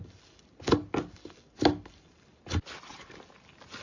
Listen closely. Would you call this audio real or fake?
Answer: real